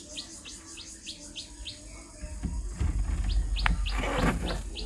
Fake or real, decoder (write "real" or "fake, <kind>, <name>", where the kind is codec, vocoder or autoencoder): real